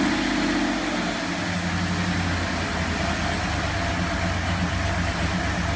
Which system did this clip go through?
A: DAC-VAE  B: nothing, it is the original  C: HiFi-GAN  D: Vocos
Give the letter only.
B